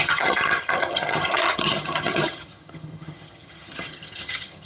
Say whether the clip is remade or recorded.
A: remade